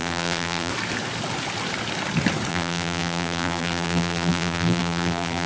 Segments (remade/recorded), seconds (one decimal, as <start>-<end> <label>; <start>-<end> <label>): 0.0-0.7 remade; 0.7-2.5 recorded; 2.5-5.5 remade